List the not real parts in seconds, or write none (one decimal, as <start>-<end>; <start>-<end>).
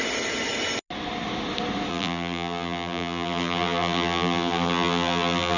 1.9-5.6